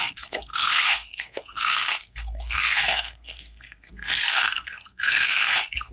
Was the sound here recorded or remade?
remade